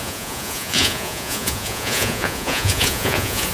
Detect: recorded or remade remade